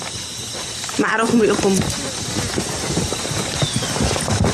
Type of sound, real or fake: real